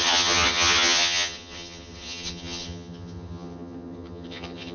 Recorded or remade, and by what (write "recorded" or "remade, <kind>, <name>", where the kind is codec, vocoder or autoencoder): remade, vocoder, HiFi-GAN